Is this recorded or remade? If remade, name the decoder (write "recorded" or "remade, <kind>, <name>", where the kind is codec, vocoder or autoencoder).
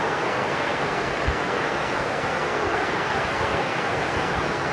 remade, codec, SNAC